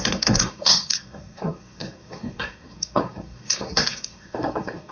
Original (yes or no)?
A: no